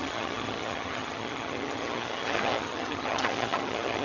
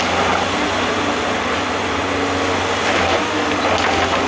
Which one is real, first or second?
second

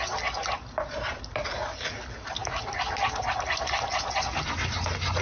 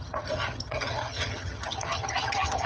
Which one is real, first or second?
first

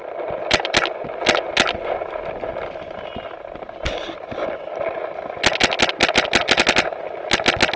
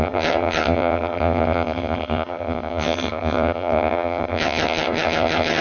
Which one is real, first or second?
first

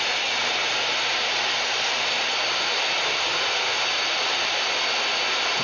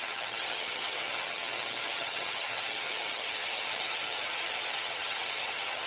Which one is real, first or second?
first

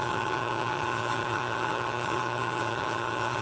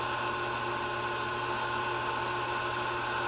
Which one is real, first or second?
second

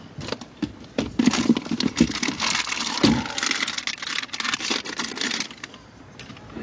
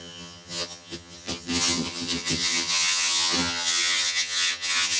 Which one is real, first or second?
first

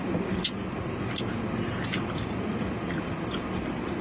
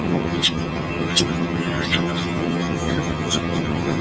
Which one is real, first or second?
first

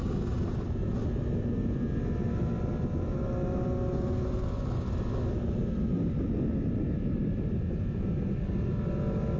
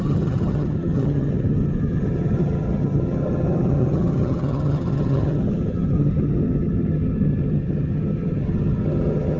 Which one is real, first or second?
first